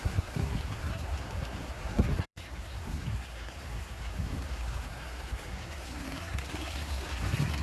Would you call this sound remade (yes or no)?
yes